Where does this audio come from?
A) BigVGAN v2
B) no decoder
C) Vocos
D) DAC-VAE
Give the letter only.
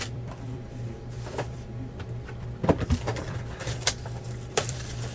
A